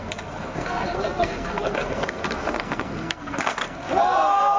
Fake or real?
fake